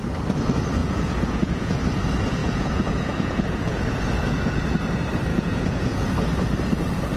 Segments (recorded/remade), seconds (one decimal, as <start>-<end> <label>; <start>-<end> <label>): 0.0-0.8 recorded; 0.8-1.8 remade; 1.8-2.4 recorded; 2.4-4.6 remade; 4.6-5.3 recorded; 5.3-6.1 remade; 6.1-7.2 recorded